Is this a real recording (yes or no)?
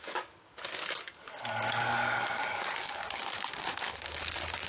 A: no